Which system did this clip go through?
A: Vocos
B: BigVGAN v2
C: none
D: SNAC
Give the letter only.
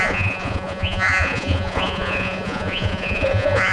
A